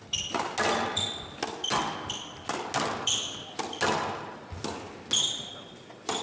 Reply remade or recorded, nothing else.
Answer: recorded